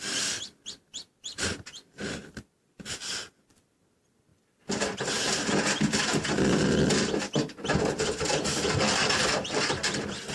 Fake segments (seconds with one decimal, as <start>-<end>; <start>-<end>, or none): 0.0-10.3